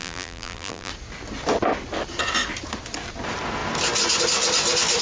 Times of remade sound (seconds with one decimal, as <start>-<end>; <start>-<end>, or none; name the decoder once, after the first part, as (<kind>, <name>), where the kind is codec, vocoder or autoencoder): 0.0-0.9 (vocoder, BigVGAN v2)